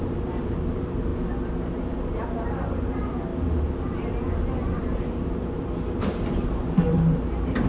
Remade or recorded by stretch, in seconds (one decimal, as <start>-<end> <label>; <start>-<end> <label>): 0.0-1.1 remade; 1.1-1.9 recorded; 1.9-3.3 remade; 3.3-3.9 recorded; 3.9-7.7 remade